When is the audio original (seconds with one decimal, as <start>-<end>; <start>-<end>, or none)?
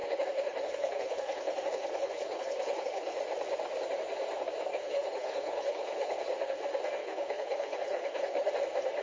3.2-4.7; 6.2-7.0; 8.5-9.0